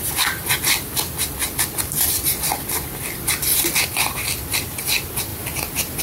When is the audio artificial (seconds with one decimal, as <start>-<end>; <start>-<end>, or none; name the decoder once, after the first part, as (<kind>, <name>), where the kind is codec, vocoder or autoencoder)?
1.4-3.6 (vocoder, BigVGAN v2)